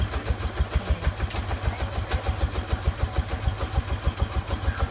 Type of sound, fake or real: real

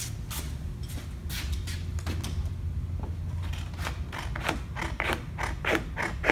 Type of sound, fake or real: real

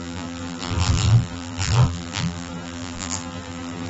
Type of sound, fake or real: fake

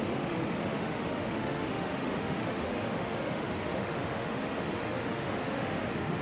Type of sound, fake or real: fake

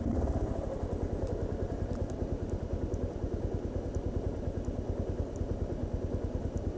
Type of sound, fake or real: real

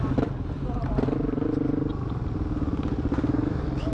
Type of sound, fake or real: real